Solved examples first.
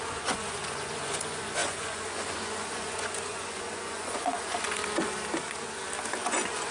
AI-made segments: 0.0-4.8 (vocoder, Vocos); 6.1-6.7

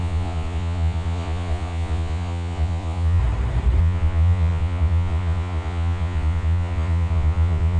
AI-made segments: 0.0-3.2 (vocoder, Vocos); 3.8-7.8

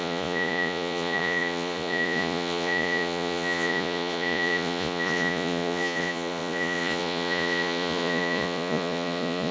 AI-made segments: 0.0-9.5 (vocoder, Vocos)

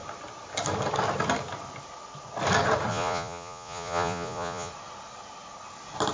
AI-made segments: 2.9-4.7 (vocoder, Vocos)

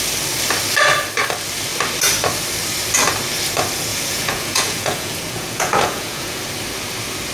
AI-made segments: 3.9-6.4 (vocoder, Vocos)

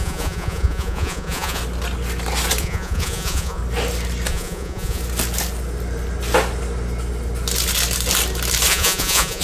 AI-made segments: 0.0-1.6 (vocoder, Vocos); 2.6-3.6; 4.3-5.0; 8.7-9.4

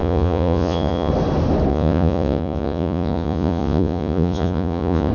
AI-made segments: 0.0-1.1 (vocoder, Vocos); 1.7-5.1

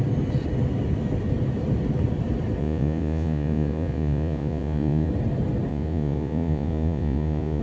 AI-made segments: 2.6-5.1 (vocoder, Vocos); 5.7-7.6